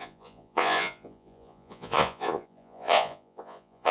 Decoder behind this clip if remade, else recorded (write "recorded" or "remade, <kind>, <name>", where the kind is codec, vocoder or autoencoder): remade, vocoder, Vocos